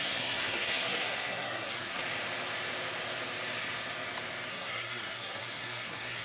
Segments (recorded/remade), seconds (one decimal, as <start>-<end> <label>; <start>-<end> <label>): 0.0-2.0 remade; 2.0-4.5 recorded; 4.5-6.2 remade